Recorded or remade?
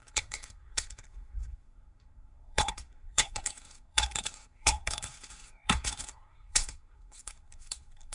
remade